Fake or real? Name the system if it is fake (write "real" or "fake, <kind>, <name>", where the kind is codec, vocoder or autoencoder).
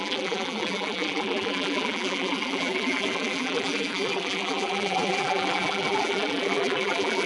fake, vocoder, BigVGAN v2